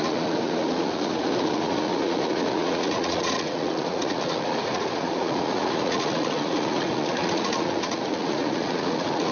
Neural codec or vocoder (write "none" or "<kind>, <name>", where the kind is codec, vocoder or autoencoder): vocoder, Vocos